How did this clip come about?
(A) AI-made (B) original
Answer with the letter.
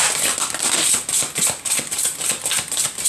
B